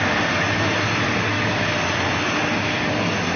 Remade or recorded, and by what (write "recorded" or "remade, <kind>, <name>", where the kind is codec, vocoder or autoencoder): recorded